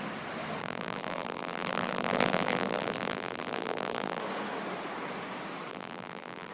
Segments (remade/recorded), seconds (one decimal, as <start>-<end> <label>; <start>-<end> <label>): 0.0-0.6 recorded; 0.6-4.2 remade; 4.2-5.7 recorded; 5.7-6.5 remade